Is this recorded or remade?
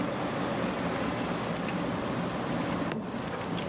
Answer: recorded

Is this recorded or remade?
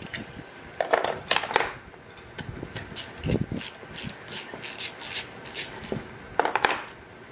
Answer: recorded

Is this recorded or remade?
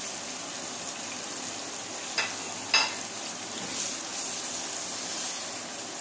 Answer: recorded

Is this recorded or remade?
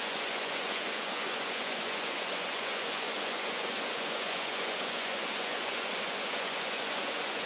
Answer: remade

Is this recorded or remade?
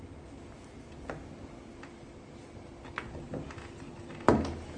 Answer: recorded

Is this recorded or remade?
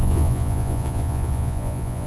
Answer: remade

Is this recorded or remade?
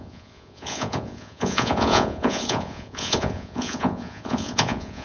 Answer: remade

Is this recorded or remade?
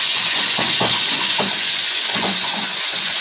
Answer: remade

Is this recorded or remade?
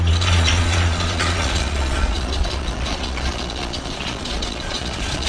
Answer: remade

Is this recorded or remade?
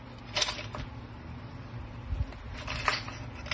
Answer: recorded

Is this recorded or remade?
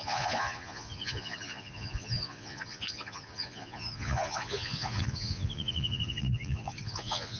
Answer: remade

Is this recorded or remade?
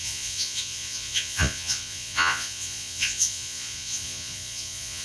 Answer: remade